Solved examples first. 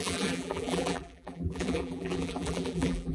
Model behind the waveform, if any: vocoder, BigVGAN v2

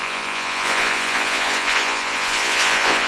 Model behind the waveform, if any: vocoder, Vocos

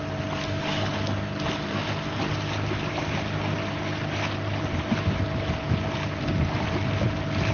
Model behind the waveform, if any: none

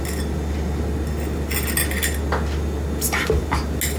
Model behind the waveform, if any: none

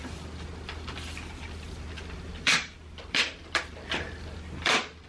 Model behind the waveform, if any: vocoder, BigVGAN v2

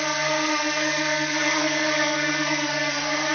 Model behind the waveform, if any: codec, SNAC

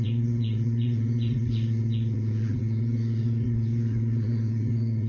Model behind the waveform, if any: vocoder, Vocos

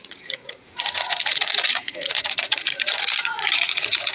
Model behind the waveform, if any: vocoder, Vocos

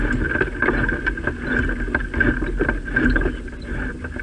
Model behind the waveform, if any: none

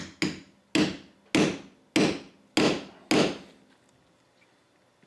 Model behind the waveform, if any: none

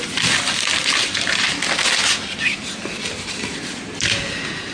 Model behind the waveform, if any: none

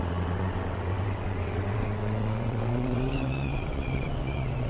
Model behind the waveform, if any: vocoder, WaveNeXt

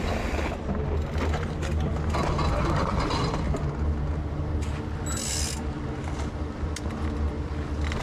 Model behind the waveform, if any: none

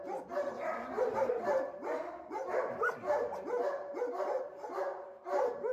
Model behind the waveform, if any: none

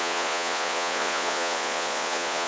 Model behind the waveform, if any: vocoder, Vocos